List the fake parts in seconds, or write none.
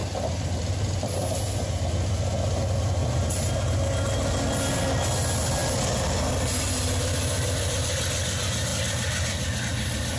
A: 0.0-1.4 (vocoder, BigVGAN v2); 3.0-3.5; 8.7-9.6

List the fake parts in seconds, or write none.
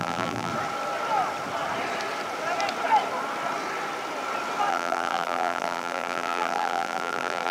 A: 0.0-0.5 (vocoder, BigVGAN v2); 4.7-7.5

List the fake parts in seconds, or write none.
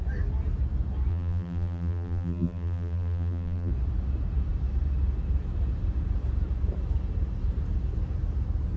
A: 1.1-3.7 (vocoder, BigVGAN v2)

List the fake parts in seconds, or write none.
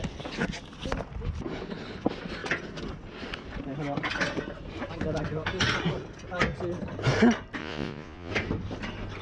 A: 7.6-8.3 (vocoder, Vocos)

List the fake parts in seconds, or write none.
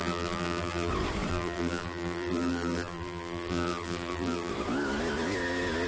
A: 0.0-0.9 (vocoder, BigVGAN v2); 1.3-4.5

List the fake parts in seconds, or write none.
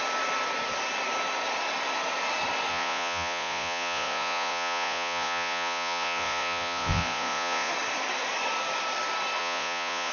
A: 2.7-7.7 (vocoder, Vocos); 9.4-10.1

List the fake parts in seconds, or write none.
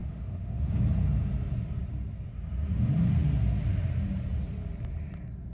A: 0.0-0.7 (autoencoder, DAC-VAE)